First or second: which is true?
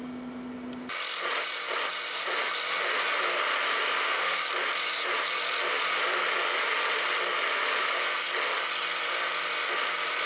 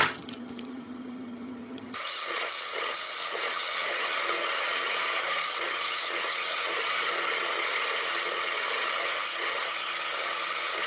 first